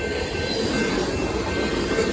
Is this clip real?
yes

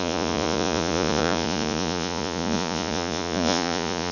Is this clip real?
no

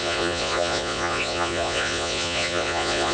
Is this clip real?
no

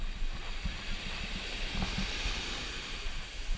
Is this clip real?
yes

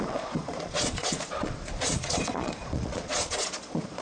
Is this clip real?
no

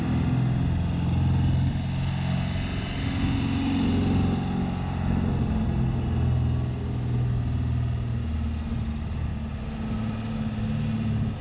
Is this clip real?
yes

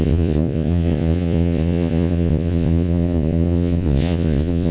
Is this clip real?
no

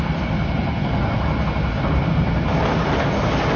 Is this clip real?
yes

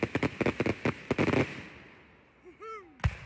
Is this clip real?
yes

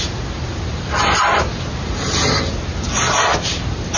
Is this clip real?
yes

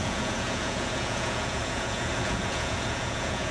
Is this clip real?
no